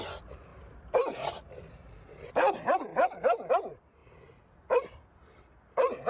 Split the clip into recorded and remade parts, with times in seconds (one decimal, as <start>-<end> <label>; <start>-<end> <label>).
0.0-2.9 remade; 2.9-3.5 recorded; 3.5-4.0 remade; 4.0-6.1 recorded